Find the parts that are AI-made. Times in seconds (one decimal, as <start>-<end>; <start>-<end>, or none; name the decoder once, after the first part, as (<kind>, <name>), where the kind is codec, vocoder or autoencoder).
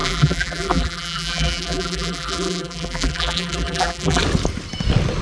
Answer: 0.0-4.2 (vocoder, BigVGAN v2)